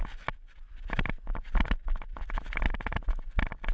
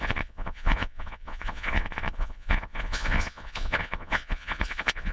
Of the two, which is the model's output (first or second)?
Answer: second